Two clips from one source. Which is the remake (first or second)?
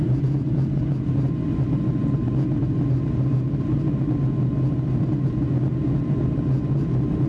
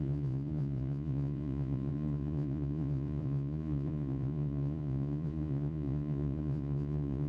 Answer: second